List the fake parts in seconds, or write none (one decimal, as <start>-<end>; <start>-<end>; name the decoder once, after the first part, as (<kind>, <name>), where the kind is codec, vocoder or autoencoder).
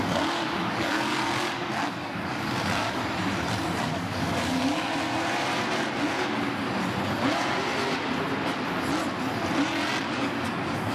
0.0-3.0 (codec, DAC); 3.8-4.9; 10.0-10.9